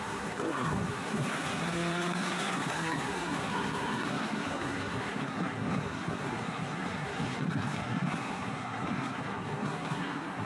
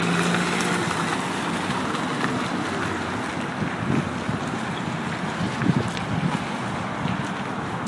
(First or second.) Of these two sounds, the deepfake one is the first